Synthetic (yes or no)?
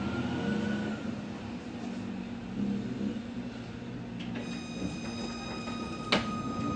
no